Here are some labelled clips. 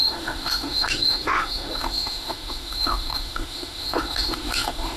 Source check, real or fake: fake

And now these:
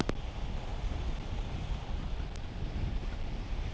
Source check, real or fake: real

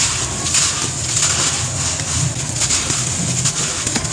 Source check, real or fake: real